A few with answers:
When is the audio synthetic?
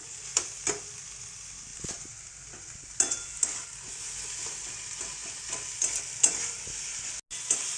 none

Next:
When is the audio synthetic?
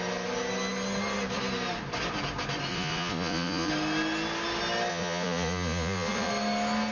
2.7-3.7; 4.9-6.3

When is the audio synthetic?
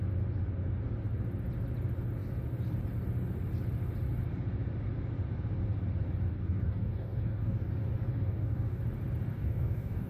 6.3-7.7; 8.1-8.8; 9.3-10.1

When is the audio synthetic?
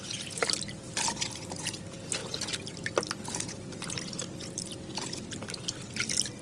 0.0-0.4; 1.8-2.2; 3.3-4.2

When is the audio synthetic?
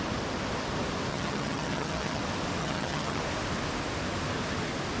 1.1-2.2; 2.6-3.2